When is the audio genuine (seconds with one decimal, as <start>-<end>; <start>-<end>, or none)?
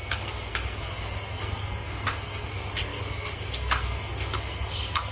none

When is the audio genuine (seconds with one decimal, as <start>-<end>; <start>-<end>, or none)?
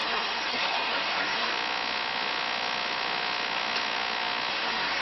1.5-4.5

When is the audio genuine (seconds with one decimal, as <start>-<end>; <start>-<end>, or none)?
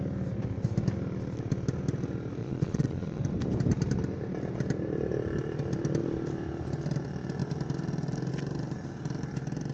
0.0-2.4; 3.2-9.7